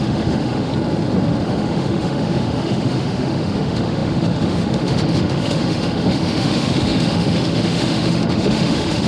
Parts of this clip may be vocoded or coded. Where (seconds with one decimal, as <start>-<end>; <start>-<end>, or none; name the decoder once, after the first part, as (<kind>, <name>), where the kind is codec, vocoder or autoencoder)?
0.0-0.7 (autoencoder, DAC-VAE); 1.4-9.1